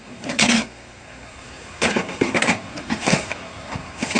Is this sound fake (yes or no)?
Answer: yes